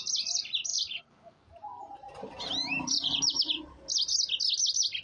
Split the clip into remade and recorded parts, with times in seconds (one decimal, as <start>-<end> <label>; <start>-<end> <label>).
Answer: 0.0-0.7 recorded; 0.7-3.7 remade; 3.7-5.0 recorded